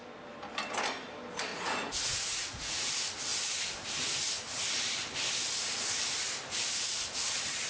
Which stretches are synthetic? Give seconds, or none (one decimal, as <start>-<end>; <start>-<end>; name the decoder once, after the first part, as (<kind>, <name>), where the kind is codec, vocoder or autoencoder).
1.5-2.9 (vocoder, Vocos)